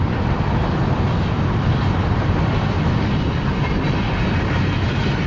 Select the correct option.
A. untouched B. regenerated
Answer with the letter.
A